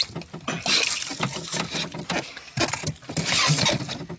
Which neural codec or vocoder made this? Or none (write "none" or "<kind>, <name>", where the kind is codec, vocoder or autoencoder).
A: none